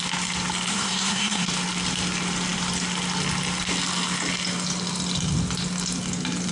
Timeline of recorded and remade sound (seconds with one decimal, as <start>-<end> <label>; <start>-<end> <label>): 0.0-0.7 recorded; 0.7-1.5 remade; 1.5-6.5 recorded